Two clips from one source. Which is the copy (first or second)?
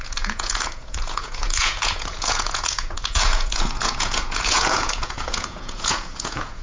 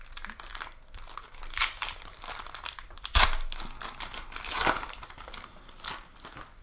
first